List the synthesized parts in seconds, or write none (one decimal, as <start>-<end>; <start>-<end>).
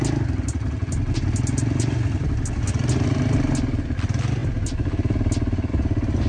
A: none